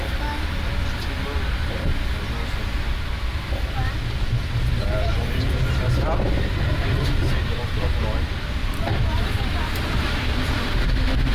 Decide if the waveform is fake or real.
real